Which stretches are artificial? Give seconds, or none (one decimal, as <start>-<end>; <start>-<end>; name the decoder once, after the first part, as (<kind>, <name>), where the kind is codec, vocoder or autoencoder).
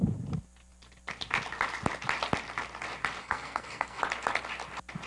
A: 3.2-4.0 (codec, SNAC)